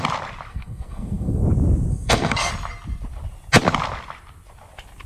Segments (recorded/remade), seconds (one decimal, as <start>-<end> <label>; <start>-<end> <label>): 0.0-0.5 recorded; 0.5-1.4 remade; 1.4-1.9 recorded; 1.9-2.5 remade; 2.5-5.1 recorded